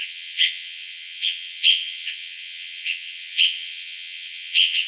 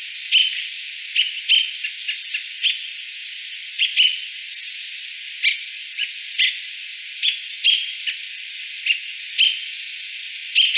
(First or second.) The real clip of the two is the second